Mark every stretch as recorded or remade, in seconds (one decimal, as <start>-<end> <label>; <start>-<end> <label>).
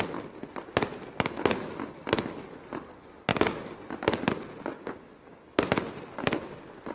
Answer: 0.0-4.7 recorded; 4.7-5.6 remade; 5.6-6.9 recorded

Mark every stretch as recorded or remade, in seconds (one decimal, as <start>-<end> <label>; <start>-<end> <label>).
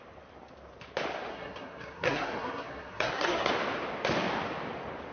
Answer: 0.0-1.3 recorded; 1.3-3.5 remade; 3.5-5.1 recorded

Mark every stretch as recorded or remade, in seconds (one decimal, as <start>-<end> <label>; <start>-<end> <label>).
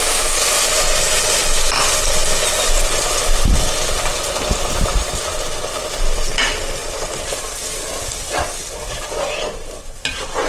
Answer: 0.0-10.5 recorded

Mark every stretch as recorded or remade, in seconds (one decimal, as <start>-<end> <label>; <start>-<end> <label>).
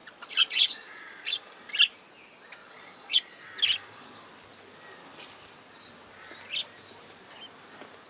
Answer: 0.0-1.4 remade; 1.4-2.6 recorded; 2.6-3.3 remade; 3.3-8.1 recorded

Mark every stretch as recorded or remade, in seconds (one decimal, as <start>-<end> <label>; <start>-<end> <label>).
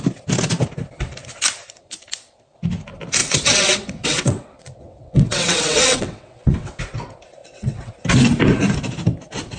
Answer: 0.0-3.2 recorded; 3.2-6.8 remade; 6.8-7.4 recorded; 7.4-7.9 remade; 7.9-9.6 recorded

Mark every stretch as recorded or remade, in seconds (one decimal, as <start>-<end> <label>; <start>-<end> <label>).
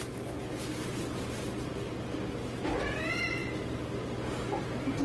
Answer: 0.0-5.0 recorded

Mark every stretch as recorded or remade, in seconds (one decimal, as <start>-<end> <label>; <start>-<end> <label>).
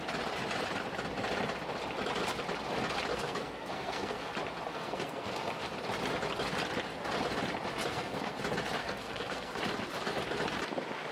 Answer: 0.0-3.1 recorded; 3.1-4.3 remade; 4.3-4.7 recorded; 4.7-5.7 remade; 5.7-7.9 recorded; 7.9-8.4 remade; 8.4-8.8 recorded; 8.8-9.6 remade; 9.6-11.1 recorded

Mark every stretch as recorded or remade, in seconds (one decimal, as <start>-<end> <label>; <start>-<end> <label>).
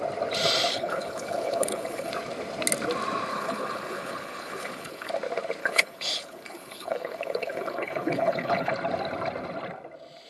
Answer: 0.0-0.7 recorded; 0.7-2.1 remade; 2.1-3.3 recorded; 3.3-5.1 remade; 5.1-5.6 recorded; 5.6-8.7 remade; 8.7-10.3 recorded